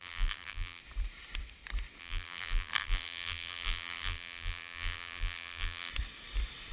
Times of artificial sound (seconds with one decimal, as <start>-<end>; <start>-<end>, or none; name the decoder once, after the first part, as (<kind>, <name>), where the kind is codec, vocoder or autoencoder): 0.0-0.8 (vocoder, BigVGAN v2); 2.0-5.9